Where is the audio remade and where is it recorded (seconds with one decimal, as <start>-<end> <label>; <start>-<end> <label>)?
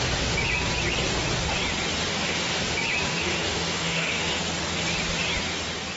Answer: 0.0-2.1 recorded; 2.1-2.6 remade; 2.6-3.1 recorded; 3.1-4.4 remade; 4.4-6.0 recorded